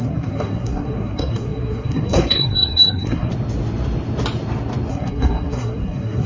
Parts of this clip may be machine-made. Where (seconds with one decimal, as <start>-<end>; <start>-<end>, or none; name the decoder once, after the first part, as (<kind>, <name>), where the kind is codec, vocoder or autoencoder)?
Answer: 0.0-3.3 (codec, SNAC); 4.9-6.3